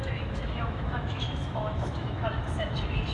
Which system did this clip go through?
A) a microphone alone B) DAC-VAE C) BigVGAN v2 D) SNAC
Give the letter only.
B